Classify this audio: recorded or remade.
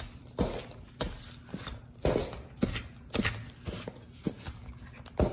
recorded